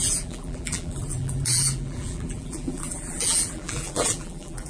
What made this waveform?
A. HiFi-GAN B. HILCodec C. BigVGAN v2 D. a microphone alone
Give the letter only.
C